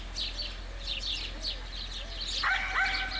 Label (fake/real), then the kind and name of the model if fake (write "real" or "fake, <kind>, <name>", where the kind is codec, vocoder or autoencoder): real